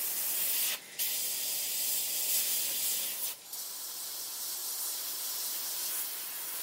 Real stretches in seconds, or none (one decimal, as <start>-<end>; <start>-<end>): 0.0-6.6

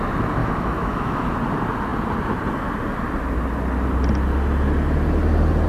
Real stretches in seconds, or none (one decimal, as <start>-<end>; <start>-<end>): 0.0-0.4; 1.3-5.7

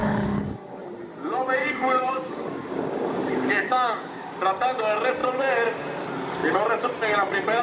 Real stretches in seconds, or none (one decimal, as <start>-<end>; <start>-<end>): 0.8-1.6; 4.4-7.6